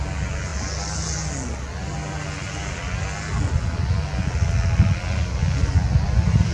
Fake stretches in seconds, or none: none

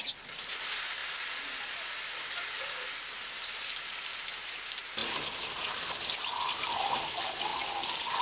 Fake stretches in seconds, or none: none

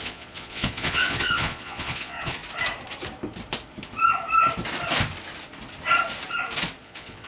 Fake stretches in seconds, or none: 0.0-2.4 (vocoder, Vocos); 6.8-7.3

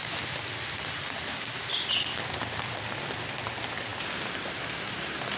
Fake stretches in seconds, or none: 0.0-5.4 (vocoder, BigVGAN v2)